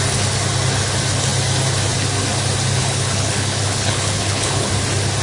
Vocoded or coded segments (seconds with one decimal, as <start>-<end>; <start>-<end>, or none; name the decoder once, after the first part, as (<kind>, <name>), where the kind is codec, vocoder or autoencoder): 2.8-4.7 (codec, HILCodec)